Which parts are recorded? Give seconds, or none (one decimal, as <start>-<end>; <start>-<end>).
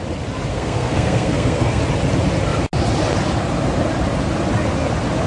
0.0-0.5; 1.8-5.3